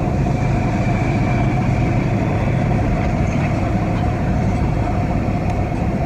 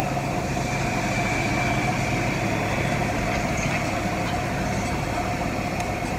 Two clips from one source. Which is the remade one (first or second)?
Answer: first